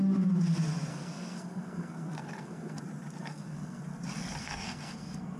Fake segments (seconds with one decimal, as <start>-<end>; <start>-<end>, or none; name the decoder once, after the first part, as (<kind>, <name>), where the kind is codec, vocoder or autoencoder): 0.9-2.8 (codec, SNAC); 3.2-3.8; 4.4-5.4